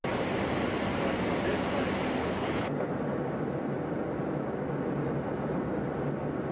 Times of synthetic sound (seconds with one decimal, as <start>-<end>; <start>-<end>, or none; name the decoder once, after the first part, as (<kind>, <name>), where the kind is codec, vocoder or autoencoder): 2.2-2.9 (codec, HILCodec)